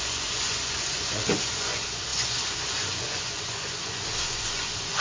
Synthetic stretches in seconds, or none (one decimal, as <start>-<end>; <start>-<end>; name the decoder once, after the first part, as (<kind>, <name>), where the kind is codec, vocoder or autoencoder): 0.0-5.0 (vocoder, Vocos)